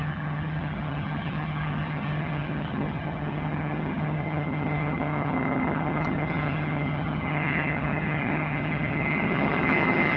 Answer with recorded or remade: remade